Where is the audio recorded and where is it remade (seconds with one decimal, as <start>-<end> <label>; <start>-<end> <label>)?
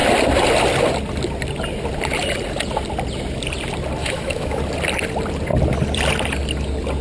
0.0-4.0 recorded; 4.0-4.6 remade; 4.6-7.0 recorded